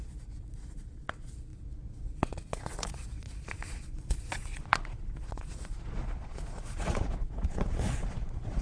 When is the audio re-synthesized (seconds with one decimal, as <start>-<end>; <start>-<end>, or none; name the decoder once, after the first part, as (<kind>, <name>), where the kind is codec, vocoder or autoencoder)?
0.0-8.6 (vocoder, Vocos)